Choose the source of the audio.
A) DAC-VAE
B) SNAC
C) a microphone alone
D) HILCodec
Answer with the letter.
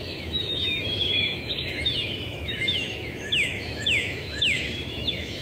A